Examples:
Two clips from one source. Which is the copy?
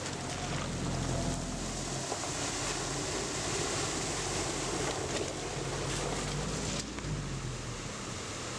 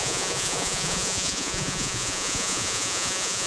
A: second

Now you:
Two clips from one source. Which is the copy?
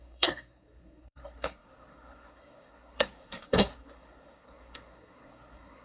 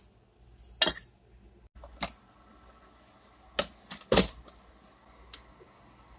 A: first